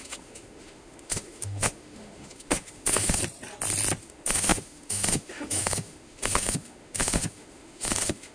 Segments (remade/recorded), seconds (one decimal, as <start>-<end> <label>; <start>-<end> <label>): 0.0-3.2 remade; 3.2-4.0 recorded; 4.0-8.3 remade